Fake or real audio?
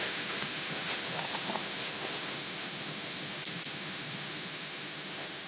fake